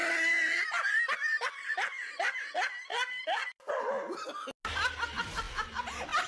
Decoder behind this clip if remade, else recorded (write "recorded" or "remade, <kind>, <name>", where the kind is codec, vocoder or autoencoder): recorded